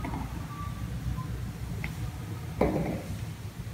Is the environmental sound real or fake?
real